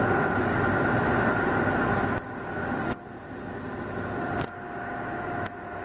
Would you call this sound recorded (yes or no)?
yes